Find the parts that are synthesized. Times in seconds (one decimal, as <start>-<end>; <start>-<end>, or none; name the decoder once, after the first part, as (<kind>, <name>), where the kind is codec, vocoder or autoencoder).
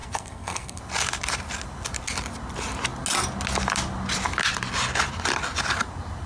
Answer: 0.0-0.8 (codec, SNAC)